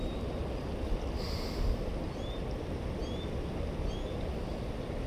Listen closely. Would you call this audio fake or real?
real